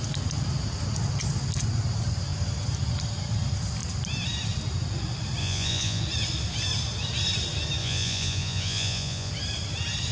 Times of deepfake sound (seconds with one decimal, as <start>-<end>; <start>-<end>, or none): 5.4-6.0; 7.8-9.3